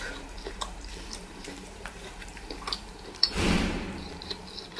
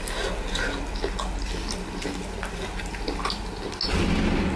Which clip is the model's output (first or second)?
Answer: first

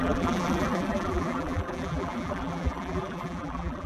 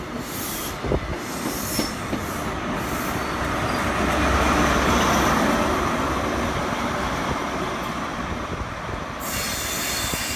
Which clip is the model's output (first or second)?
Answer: first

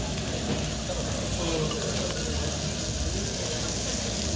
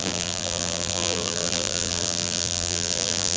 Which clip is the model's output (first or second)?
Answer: second